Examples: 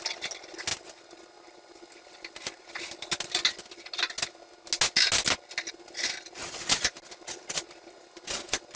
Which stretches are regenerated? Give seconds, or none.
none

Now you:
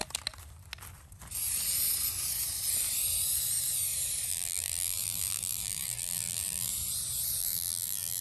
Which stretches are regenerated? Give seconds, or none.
4.3-6.7 (vocoder, BigVGAN v2); 7.4-8.2

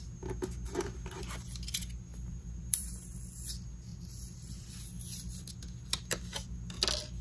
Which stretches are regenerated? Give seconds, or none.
2.1-3.2 (vocoder, BigVGAN v2); 3.9-4.7

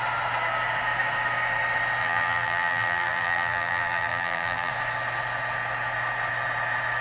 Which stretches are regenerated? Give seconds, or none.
2.0-4.7 (vocoder, BigVGAN v2)

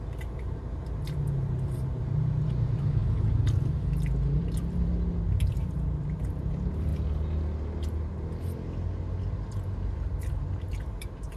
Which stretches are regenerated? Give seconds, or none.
0.0-3.0 (vocoder, BigVGAN v2); 4.4-4.9; 5.4-6.9; 10.3-11.4

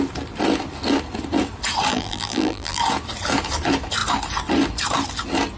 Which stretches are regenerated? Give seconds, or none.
1.9-2.8 (vocoder, BigVGAN v2)

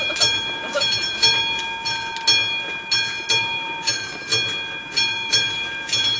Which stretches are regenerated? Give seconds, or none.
0.0-1.4 (vocoder, BigVGAN v2); 3.4-4.3; 4.8-6.2